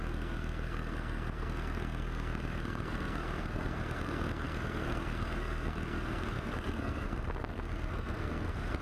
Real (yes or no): no